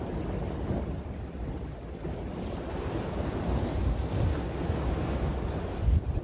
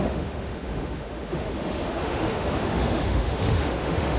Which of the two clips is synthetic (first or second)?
second